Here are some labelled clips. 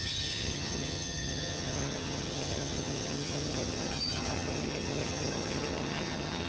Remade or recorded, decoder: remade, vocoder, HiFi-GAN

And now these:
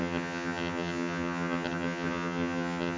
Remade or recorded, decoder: remade, vocoder, HiFi-GAN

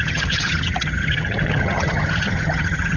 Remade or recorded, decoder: remade, vocoder, HiFi-GAN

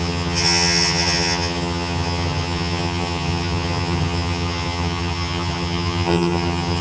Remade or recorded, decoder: remade, vocoder, HiFi-GAN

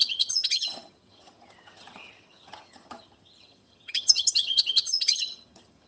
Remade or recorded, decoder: remade, vocoder, HiFi-GAN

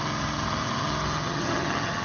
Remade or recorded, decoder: remade, vocoder, HiFi-GAN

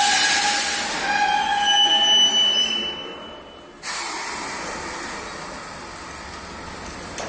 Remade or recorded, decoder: recorded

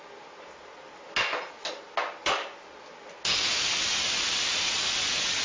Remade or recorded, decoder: recorded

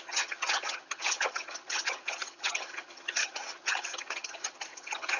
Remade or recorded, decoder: remade, vocoder, HiFi-GAN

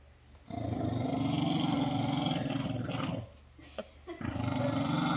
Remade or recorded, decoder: recorded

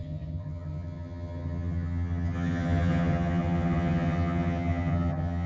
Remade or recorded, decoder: remade, vocoder, HiFi-GAN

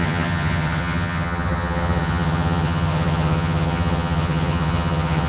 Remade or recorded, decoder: remade, vocoder, HiFi-GAN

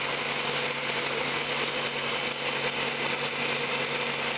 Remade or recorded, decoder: recorded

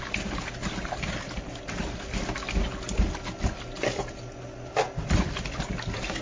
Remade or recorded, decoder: recorded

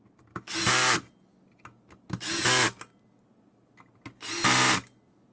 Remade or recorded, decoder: recorded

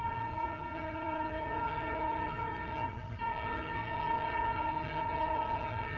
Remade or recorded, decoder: remade, vocoder, HiFi-GAN